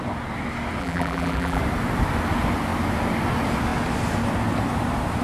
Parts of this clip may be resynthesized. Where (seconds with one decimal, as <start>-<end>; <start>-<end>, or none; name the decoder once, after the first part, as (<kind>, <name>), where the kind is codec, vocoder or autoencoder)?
0.8-1.6 (vocoder, BigVGAN v2)